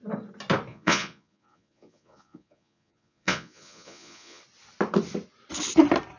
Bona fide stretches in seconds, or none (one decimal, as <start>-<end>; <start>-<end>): 0.0-0.7; 4.4-6.2